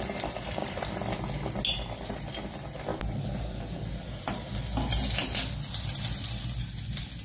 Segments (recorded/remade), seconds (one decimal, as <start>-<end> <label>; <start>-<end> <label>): 0.0-7.2 recorded